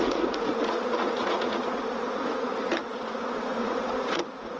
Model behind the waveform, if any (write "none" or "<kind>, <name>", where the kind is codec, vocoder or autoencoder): vocoder, Vocos